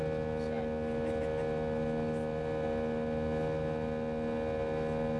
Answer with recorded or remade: recorded